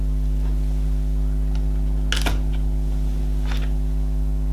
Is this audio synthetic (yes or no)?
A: no